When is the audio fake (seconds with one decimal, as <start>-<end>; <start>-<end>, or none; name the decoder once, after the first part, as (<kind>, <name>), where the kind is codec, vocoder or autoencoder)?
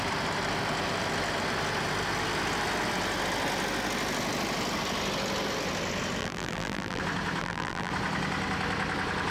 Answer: 6.2-7.0 (vocoder, BigVGAN v2); 7.4-7.9